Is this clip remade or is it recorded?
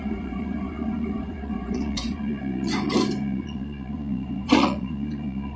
remade